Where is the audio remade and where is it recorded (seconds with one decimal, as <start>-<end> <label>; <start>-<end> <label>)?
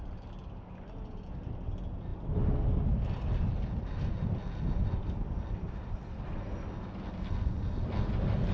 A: 0.0-8.5 recorded